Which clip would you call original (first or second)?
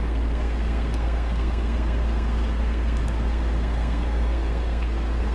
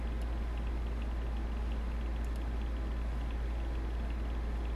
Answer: second